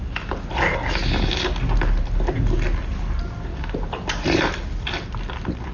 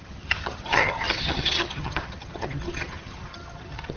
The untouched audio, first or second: first